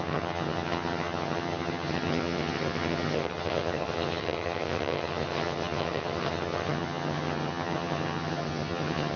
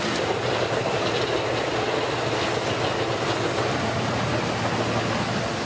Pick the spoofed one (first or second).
first